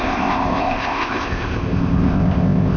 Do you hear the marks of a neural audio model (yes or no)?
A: yes